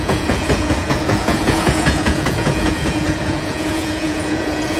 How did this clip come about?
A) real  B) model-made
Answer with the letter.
B